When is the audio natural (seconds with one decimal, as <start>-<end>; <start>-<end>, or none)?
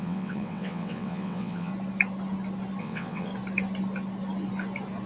1.7-2.8; 3.3-5.1